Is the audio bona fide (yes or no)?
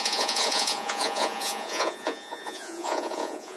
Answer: no